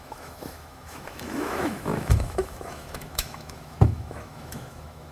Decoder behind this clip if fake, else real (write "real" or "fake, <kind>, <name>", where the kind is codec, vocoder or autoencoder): fake, autoencoder, DAC-VAE